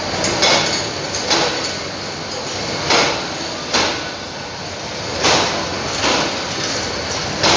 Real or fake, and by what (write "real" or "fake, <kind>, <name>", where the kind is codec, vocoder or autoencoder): real